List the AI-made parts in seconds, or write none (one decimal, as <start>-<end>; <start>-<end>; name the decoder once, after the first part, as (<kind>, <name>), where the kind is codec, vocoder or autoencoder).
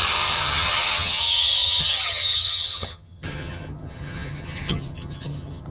0.0-5.7 (vocoder, HiFi-GAN)